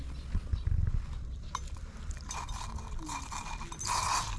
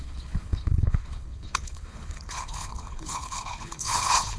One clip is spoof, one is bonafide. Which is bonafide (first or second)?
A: first